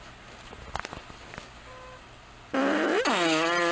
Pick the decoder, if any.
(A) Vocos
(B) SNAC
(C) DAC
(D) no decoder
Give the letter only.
D